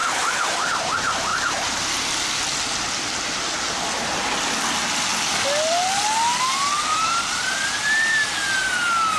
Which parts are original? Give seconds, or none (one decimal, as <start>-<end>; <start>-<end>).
0.7-6.9; 8.2-9.2